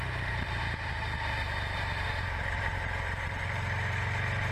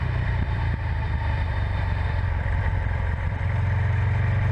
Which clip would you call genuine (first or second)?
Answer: first